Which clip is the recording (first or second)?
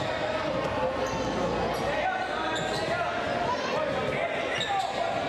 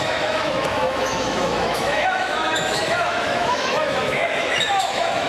first